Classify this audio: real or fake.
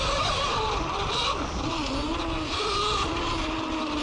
real